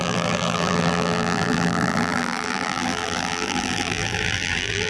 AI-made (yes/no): yes